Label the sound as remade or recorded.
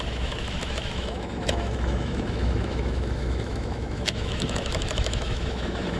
remade